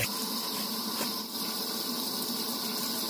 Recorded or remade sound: remade